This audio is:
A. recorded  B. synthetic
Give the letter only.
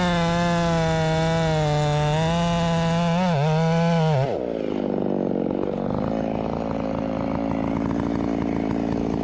A